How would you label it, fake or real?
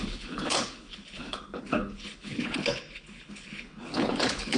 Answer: fake